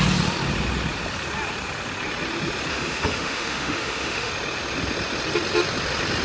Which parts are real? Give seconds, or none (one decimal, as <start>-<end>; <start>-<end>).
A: 0.0-2.7; 4.3-6.2